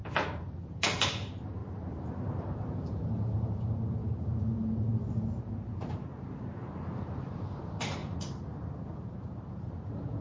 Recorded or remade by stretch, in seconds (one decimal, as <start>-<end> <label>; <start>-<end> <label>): 0.0-1.6 remade; 1.6-2.5 recorded; 2.5-10.2 remade